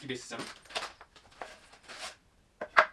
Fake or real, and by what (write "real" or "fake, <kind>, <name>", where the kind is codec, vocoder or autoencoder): real